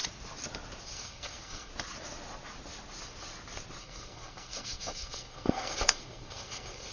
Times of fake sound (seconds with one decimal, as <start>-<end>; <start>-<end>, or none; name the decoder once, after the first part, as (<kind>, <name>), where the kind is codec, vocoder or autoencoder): 0.8-1.7 (codec, SNAC); 3.8-6.9